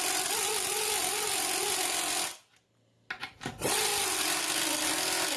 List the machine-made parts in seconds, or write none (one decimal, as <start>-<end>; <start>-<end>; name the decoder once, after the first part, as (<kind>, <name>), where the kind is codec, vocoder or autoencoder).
none